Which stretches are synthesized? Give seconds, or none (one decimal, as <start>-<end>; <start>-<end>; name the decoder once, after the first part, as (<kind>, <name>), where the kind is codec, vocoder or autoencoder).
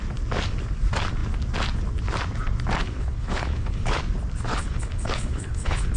2.8-4.0 (codec, HILCodec); 4.5-6.0